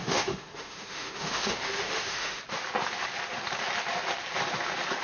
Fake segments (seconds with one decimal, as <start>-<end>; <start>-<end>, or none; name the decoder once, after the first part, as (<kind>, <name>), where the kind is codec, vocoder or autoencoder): 0.0-2.4 (autoencoder, DAC-VAE)